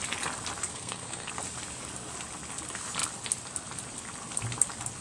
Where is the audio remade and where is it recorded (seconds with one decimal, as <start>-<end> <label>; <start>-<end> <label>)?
0.0-0.7 recorded; 0.7-1.3 remade; 1.3-5.0 recorded